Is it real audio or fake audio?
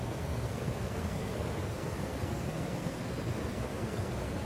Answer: fake